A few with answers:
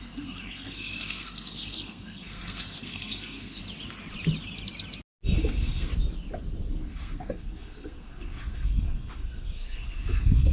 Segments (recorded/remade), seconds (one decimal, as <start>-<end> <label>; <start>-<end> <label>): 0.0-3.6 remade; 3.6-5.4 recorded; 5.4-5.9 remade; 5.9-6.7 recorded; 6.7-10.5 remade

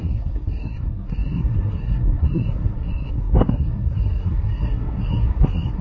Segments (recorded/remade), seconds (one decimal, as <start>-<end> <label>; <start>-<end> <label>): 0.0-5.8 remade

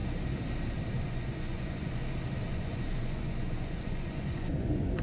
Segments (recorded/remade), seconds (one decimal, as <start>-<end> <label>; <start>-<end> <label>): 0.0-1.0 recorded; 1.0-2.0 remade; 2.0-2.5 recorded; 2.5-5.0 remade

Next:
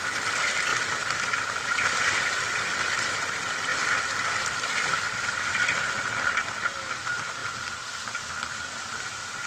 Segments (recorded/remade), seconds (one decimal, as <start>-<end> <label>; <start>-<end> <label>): 0.0-9.5 recorded